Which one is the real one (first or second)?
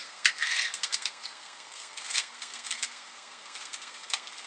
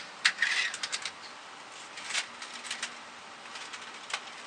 second